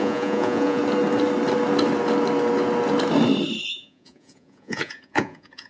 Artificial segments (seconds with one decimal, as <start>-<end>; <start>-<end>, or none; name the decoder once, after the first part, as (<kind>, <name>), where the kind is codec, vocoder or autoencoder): 0.0-0.8 (vocoder, Vocos); 3.7-5.7